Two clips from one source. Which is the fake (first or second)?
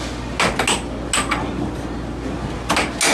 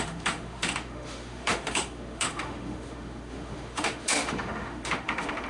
second